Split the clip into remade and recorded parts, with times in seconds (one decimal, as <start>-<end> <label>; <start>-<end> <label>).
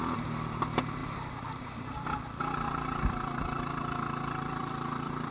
0.0-1.0 remade; 1.0-1.6 recorded; 1.6-5.3 remade